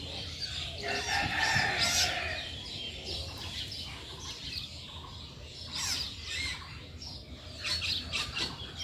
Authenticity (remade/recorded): recorded